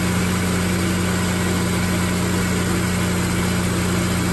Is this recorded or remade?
recorded